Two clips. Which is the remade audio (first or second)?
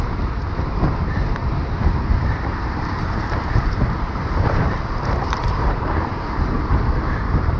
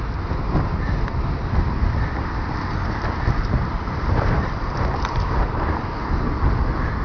first